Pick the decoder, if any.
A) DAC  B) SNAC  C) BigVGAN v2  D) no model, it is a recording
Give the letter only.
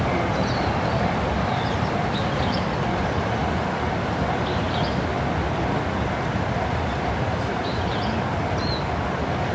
D